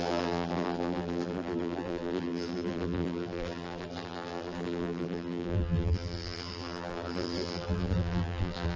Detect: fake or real fake